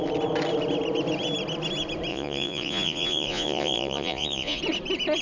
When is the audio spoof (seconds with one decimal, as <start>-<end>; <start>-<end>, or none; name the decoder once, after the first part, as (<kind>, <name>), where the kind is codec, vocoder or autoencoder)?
2.1-4.6 (vocoder, Vocos)